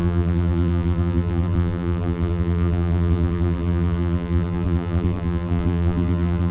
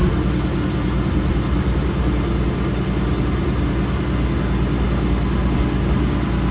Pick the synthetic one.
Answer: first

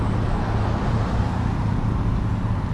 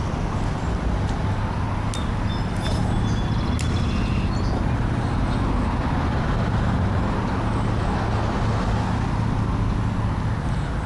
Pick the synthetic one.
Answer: first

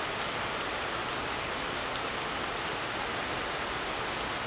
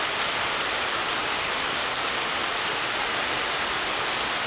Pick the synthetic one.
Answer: second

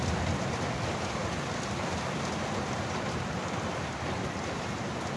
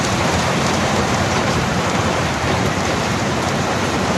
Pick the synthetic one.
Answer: second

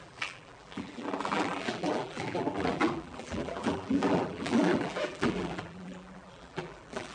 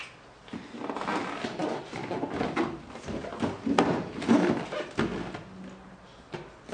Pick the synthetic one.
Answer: first